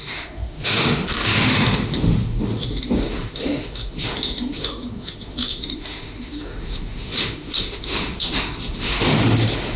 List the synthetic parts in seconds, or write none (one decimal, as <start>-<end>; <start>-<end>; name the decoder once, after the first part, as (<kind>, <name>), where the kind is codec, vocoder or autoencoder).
0.0-9.8 (autoencoder, DAC-VAE)